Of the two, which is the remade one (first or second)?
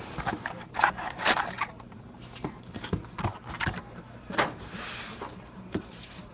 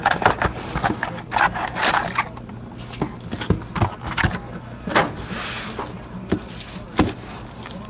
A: first